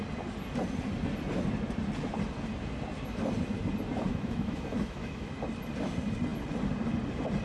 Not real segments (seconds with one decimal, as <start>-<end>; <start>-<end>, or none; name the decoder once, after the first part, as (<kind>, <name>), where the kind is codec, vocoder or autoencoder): 4.1-5.3 (autoencoder, DAC-VAE)